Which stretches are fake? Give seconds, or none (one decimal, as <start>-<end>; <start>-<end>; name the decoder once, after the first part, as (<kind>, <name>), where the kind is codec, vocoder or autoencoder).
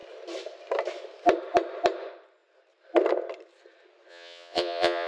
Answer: 4.1-5.1 (vocoder, Vocos)